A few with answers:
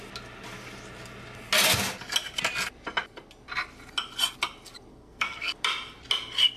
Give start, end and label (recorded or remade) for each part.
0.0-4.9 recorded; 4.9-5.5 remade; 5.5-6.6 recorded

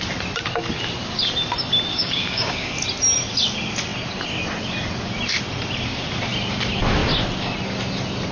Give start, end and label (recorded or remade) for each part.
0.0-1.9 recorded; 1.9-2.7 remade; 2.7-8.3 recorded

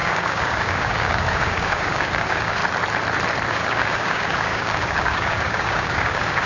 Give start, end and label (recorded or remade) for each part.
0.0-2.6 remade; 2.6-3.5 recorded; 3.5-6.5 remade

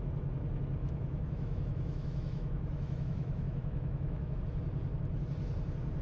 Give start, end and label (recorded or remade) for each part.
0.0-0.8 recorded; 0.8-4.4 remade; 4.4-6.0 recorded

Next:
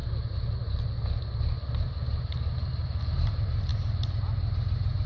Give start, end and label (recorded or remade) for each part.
0.0-5.1 recorded